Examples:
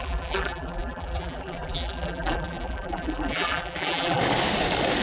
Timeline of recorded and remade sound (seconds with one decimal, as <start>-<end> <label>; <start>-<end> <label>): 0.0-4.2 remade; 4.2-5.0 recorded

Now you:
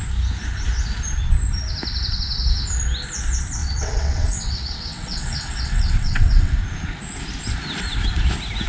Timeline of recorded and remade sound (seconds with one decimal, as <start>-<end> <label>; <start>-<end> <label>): 0.0-3.6 recorded; 3.6-6.6 remade; 6.6-8.7 recorded

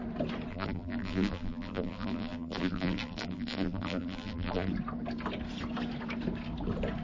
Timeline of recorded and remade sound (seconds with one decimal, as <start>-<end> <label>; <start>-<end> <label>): 0.0-0.5 recorded; 0.5-4.7 remade; 4.7-7.0 recorded

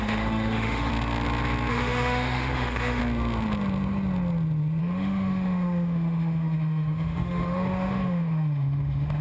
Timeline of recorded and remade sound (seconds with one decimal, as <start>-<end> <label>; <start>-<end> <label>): 0.0-0.9 remade; 0.9-1.7 recorded; 1.7-3.0 remade; 3.0-4.8 recorded; 4.8-9.2 remade

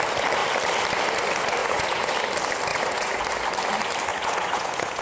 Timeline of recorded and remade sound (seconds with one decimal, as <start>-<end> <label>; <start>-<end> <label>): 0.0-1.6 recorded; 1.6-2.1 remade; 2.1-2.7 recorded; 2.7-3.2 remade; 3.2-4.1 recorded; 4.1-5.0 remade

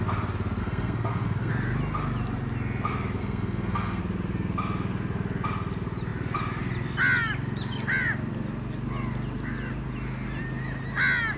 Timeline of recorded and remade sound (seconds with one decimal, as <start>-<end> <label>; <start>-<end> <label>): 0.0-0.6 recorded; 0.6-1.5 remade; 1.5-3.2 recorded; 3.2-4.0 remade; 4.0-11.4 recorded